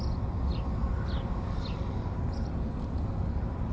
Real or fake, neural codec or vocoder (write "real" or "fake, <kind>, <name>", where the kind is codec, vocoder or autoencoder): real